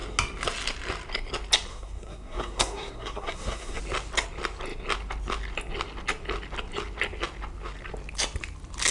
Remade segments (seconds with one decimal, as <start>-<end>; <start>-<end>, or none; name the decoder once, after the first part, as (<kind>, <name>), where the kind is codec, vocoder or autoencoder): 1.7-3.8 (codec, SNAC)